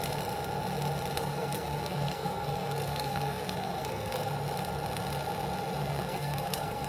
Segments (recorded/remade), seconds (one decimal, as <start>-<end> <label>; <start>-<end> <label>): 0.0-1.2 recorded; 1.2-4.3 remade; 4.3-5.8 recorded; 5.8-6.9 remade